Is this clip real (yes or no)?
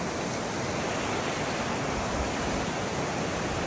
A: yes